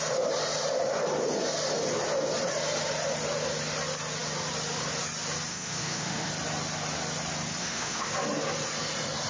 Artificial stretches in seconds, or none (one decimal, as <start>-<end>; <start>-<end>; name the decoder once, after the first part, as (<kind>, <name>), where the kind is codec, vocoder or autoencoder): 5.5-6.3 (autoencoder, DAC-VAE); 7.6-8.1